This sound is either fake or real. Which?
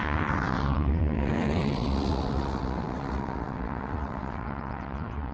fake